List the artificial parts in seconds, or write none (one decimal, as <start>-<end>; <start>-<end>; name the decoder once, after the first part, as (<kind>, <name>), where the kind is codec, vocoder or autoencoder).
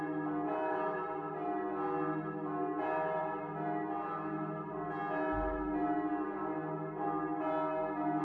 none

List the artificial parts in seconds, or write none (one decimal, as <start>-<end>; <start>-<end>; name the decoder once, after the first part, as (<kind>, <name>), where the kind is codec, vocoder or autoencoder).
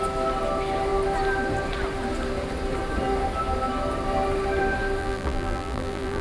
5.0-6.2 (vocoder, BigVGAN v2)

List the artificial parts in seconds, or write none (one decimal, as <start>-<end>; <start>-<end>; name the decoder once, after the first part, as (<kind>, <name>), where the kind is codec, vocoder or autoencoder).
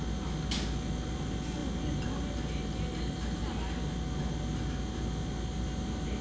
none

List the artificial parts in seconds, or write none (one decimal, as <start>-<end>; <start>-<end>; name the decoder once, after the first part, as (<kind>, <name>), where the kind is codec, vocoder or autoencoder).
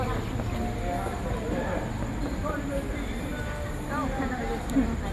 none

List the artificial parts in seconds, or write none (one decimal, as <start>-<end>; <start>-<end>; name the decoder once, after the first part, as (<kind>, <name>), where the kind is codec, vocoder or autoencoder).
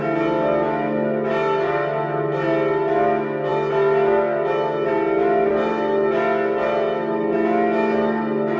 none